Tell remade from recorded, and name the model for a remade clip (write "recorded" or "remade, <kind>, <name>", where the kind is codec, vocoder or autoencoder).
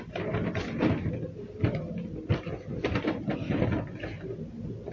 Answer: recorded